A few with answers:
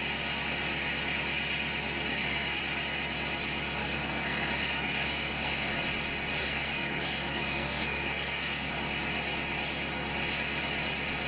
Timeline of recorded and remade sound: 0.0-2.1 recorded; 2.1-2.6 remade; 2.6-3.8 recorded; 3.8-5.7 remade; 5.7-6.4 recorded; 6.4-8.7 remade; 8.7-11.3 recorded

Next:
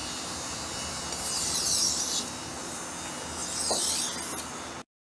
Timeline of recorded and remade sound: 0.0-1.9 remade; 1.9-5.0 recorded

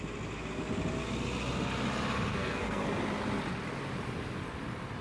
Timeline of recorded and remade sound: 0.0-2.3 recorded; 2.3-2.8 remade; 2.8-5.0 recorded

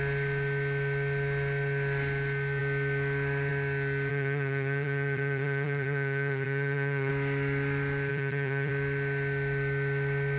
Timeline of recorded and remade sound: 0.0-4.1 recorded; 4.1-7.1 remade; 7.1-8.1 recorded; 8.1-8.7 remade; 8.7-10.4 recorded

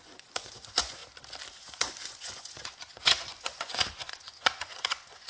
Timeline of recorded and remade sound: 0.0-1.0 remade; 1.0-1.5 recorded; 1.5-5.3 remade